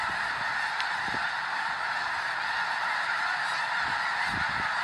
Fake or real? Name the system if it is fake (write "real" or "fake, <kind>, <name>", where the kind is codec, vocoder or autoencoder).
real